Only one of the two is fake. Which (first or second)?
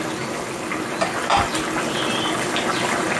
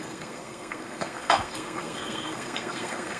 second